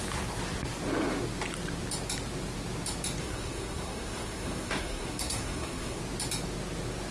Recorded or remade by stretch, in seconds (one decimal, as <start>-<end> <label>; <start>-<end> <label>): 0.0-3.2 recorded; 3.2-6.0 remade; 6.0-7.1 recorded

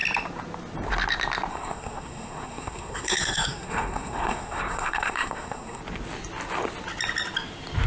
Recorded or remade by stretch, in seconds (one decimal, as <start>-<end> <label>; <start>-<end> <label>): 0.0-1.5 recorded; 1.5-5.8 remade; 5.8-7.9 recorded

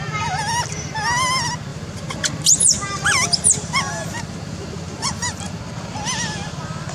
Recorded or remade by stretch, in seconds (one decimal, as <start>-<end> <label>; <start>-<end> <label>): 0.0-1.7 recorded; 1.7-5.5 remade; 5.5-6.9 recorded

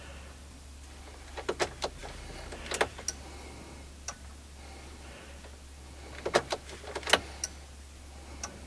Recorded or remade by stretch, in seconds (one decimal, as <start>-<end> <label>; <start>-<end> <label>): 0.0-8.7 recorded

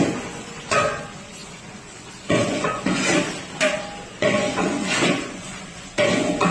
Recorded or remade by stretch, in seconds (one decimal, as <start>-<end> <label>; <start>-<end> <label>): 0.0-3.1 remade; 3.1-4.1 recorded; 4.1-6.5 remade